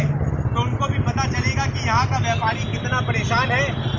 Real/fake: real